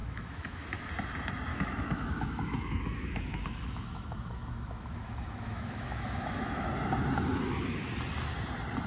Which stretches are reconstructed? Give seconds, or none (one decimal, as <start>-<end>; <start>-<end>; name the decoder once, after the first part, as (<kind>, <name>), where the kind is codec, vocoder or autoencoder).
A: 0.0-0.9 (autoencoder, DAC-VAE); 1.5-6.7